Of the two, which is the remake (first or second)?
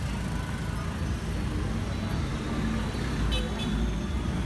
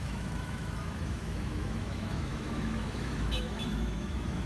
second